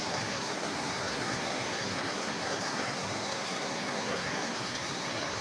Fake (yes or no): yes